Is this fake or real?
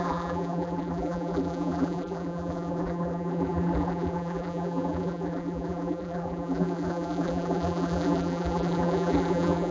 fake